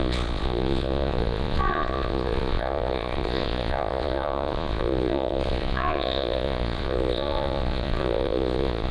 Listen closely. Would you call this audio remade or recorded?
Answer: remade